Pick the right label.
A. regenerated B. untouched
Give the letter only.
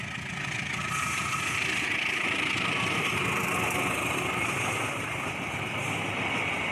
B